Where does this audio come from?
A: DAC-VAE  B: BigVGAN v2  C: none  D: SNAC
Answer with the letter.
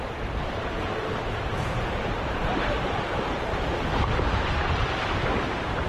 B